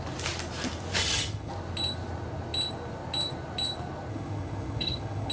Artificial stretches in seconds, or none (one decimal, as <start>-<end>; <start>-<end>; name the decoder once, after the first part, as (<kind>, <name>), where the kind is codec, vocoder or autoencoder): 1.0-1.5 (vocoder, HiFi-GAN); 4.1-5.3